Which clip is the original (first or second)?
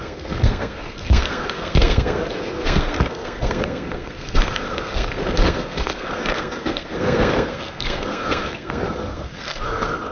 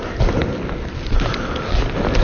second